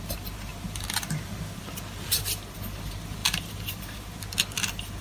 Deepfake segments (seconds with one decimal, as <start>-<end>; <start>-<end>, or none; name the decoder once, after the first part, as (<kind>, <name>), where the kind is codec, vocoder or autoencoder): 0.5-1.6 (vocoder, BigVGAN v2); 3.2-4.2